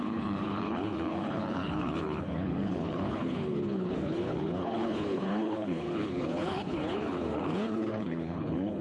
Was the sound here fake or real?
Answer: fake